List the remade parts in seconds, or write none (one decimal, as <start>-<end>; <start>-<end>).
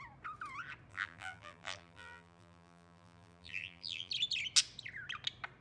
0.9-4.1